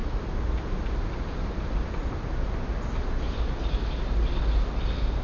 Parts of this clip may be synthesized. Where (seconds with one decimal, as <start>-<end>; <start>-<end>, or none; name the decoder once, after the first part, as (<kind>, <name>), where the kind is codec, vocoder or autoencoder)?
none